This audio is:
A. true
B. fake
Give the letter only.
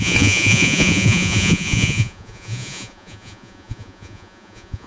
B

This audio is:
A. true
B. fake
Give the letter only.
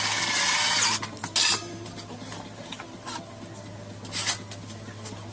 A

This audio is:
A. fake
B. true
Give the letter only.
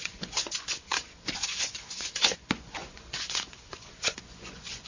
A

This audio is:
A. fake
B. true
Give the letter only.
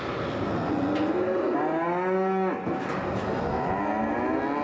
B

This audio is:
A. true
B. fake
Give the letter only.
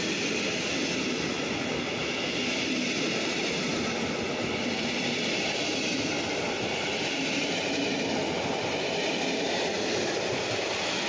A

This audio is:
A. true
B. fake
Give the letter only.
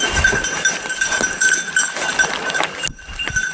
A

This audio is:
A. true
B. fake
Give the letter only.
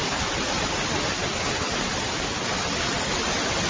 A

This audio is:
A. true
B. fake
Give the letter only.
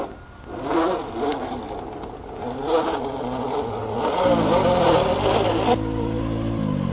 A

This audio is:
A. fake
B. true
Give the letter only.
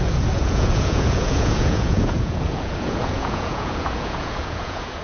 A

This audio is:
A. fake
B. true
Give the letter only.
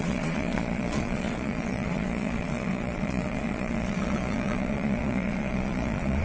A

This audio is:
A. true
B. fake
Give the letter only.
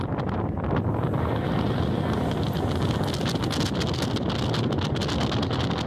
A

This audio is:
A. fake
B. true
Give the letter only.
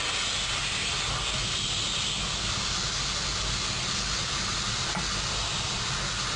B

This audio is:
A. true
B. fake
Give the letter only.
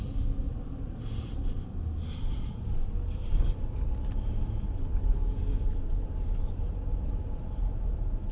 A